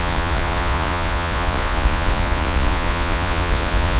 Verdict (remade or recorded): remade